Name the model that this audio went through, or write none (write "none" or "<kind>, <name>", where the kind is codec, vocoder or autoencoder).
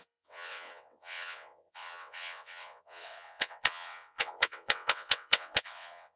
vocoder, WaveNeXt